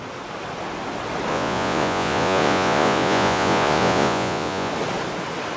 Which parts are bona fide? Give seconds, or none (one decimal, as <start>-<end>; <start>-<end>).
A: 0.0-1.3; 4.7-5.6